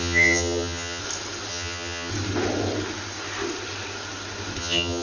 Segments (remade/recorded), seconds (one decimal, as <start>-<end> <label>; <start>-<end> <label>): 0.0-1.0 remade; 1.0-1.5 recorded; 1.5-2.1 remade; 2.1-4.6 recorded; 4.6-5.0 remade